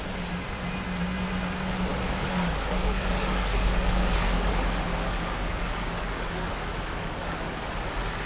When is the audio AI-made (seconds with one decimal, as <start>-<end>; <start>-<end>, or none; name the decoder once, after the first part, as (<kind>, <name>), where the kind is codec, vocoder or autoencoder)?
1.9-4.5 (codec, DAC); 4.9-7.7